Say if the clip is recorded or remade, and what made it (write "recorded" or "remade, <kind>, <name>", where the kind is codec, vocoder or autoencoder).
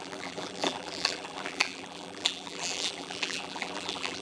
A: remade, vocoder, BigVGAN v2